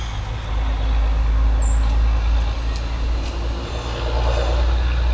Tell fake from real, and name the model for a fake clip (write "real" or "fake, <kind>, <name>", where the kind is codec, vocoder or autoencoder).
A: real